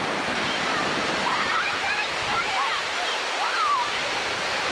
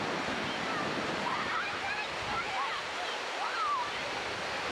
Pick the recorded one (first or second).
second